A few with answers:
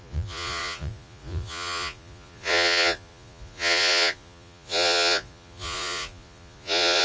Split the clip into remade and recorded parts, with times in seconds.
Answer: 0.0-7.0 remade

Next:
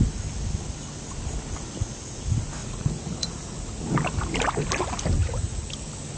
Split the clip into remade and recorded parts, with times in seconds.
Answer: 0.0-2.6 recorded; 2.6-3.8 remade; 3.8-5.2 recorded; 5.2-5.7 remade; 5.7-6.2 recorded

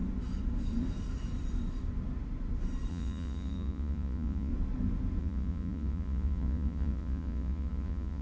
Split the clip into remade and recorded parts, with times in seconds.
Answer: 0.0-2.9 recorded; 2.9-4.5 remade; 4.5-5.2 recorded; 5.2-8.2 remade